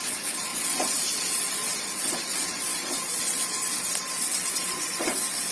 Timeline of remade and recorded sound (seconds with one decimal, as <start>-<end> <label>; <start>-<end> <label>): 0.0-5.5 remade